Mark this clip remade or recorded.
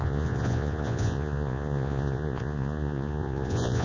remade